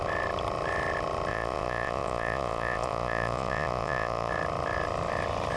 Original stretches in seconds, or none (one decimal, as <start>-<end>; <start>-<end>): 0.0-1.3; 4.3-5.6